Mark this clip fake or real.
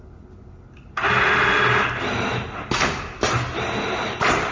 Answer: real